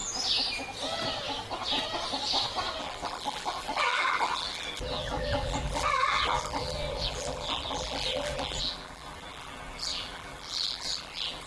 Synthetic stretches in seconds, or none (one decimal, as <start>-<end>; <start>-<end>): 2.8-11.5